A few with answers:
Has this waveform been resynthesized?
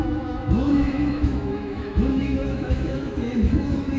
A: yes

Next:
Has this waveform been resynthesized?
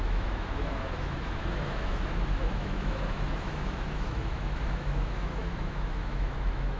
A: yes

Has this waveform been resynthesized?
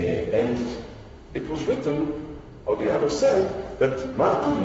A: yes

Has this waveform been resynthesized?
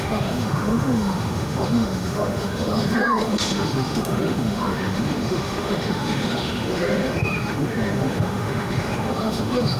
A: yes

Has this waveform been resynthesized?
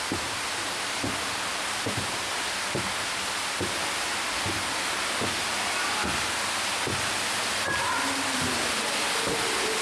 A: no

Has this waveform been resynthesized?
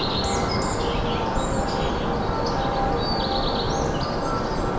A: no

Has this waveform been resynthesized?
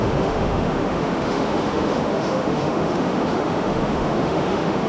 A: yes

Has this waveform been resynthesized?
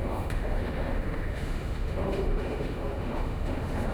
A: yes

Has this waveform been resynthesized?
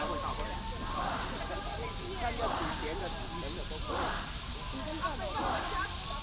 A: no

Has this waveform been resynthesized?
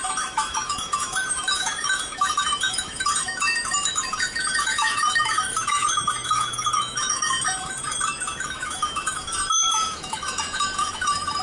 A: yes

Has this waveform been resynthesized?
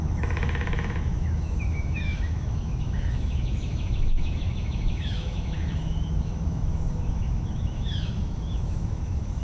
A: yes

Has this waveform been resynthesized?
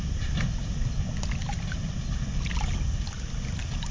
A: no